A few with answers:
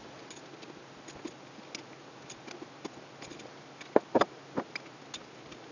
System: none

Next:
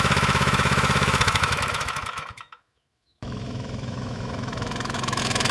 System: autoencoder, DAC-VAE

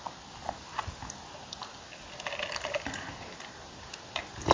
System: none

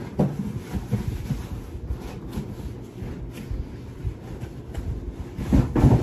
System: none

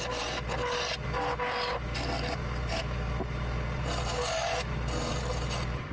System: none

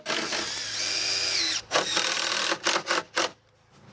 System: none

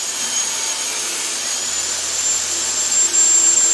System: none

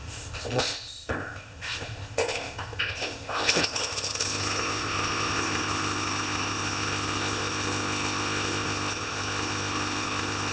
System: codec, ZipCodec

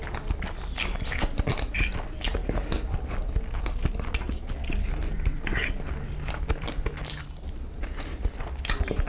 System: none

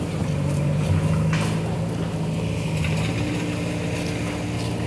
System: none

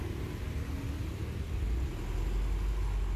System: none